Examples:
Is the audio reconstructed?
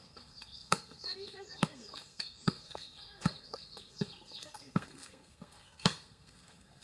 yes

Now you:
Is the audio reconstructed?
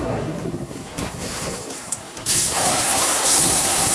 yes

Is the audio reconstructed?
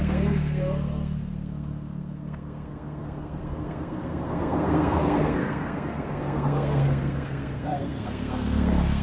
yes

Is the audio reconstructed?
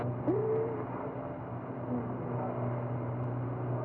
no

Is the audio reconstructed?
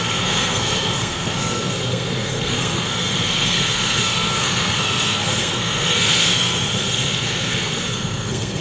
yes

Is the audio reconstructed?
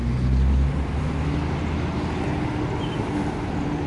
no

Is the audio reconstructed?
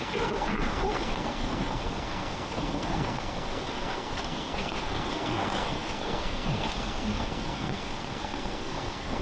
yes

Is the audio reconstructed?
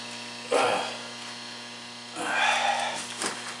no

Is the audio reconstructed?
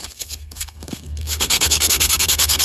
yes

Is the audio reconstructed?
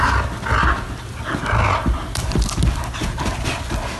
no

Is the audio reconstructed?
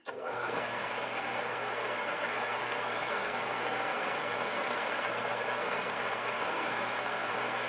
yes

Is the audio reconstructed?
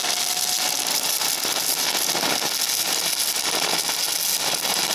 no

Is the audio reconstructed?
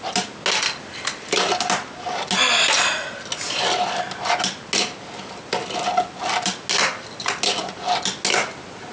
no